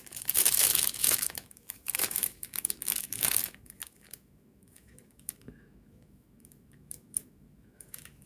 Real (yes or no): no